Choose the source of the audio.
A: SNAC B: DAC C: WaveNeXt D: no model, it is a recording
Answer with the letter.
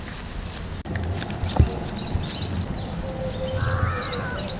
D